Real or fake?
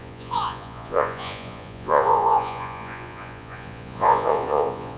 fake